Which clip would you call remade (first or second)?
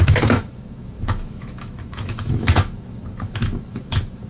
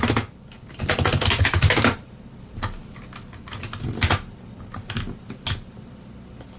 first